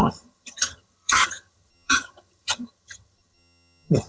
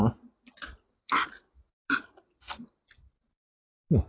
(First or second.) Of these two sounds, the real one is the second